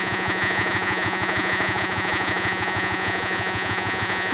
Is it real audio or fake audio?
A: fake